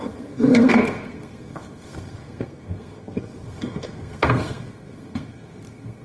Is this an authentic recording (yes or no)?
no